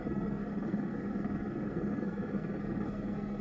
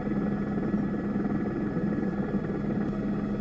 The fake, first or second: first